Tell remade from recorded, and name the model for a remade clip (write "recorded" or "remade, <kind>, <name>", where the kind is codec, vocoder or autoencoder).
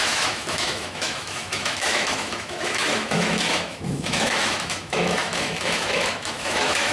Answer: remade, autoencoder, DAC-VAE